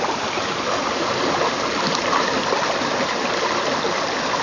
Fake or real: real